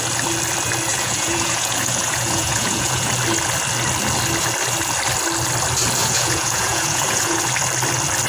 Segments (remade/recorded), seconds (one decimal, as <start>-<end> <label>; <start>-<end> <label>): 0.0-0.9 recorded; 0.9-3.1 remade; 3.1-6.0 recorded; 6.0-7.4 remade; 7.4-8.3 recorded